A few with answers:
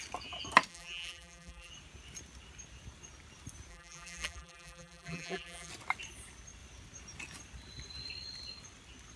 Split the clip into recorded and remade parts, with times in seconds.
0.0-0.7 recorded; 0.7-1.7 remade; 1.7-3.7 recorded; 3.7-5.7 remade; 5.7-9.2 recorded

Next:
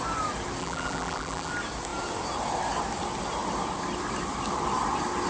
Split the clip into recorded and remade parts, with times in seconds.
0.0-0.6 recorded; 0.6-1.5 remade; 1.5-5.3 recorded

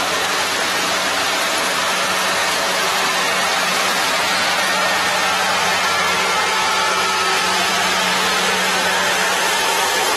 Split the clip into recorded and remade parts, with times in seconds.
0.0-2.4 recorded; 2.4-3.0 remade; 3.0-3.7 recorded; 3.7-4.4 remade; 4.4-10.2 recorded

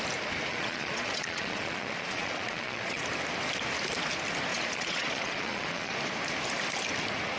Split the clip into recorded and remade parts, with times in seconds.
0.0-0.5 recorded; 0.5-3.0 remade; 3.0-4.5 recorded; 4.5-6.0 remade; 6.0-7.4 recorded